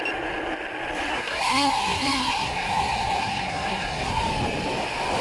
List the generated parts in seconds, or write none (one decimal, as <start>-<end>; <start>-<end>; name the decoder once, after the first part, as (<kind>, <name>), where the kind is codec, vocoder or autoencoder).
1.1-4.2 (codec, SNAC)